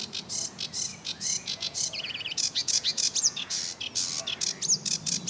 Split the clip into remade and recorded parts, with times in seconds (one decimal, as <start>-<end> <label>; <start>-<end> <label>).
0.0-0.9 recorded; 0.9-3.6 remade; 3.6-5.3 recorded